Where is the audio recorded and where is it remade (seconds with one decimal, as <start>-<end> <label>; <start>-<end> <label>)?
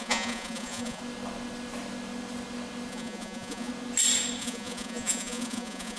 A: 0.0-1.0 remade; 1.0-2.9 recorded; 2.9-3.7 remade; 3.7-4.4 recorded; 4.4-6.0 remade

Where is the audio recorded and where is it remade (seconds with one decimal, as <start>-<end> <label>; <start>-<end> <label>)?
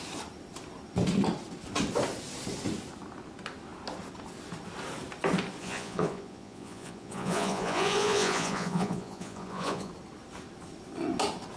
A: 0.0-5.6 recorded; 5.6-9.9 remade; 9.9-11.6 recorded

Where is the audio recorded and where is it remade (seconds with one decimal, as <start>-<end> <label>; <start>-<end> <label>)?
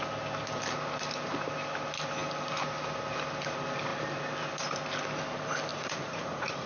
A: 0.0-5.7 recorded; 5.7-6.7 remade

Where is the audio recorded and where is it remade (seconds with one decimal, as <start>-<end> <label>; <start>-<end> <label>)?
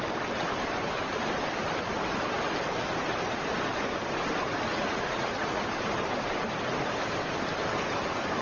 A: 0.0-4.7 recorded; 4.7-5.6 remade; 5.6-8.4 recorded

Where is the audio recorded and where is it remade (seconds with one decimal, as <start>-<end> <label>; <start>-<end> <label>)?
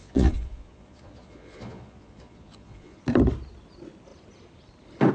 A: 0.0-3.0 remade; 3.0-5.1 recorded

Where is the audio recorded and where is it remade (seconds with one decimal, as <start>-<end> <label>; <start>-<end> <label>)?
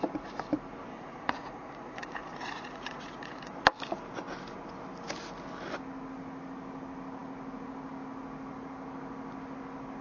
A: 0.0-0.9 recorded; 0.9-3.5 remade; 3.5-10.0 recorded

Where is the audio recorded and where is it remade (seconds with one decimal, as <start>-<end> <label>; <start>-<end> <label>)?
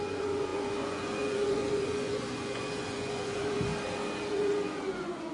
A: 0.0-3.7 remade; 3.7-4.3 recorded; 4.3-5.3 remade